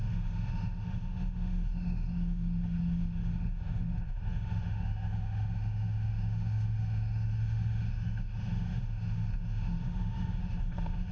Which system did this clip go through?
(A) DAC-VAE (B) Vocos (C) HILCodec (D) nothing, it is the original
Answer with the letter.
A